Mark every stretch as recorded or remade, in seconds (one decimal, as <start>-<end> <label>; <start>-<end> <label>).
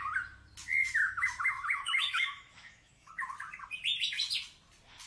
0.0-0.8 recorded; 0.8-3.1 remade; 3.1-5.1 recorded